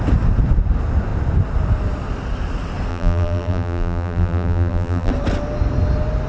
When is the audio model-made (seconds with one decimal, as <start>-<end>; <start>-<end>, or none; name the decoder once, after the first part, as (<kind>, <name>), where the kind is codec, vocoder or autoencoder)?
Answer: 2.9-5.1 (vocoder, BigVGAN v2)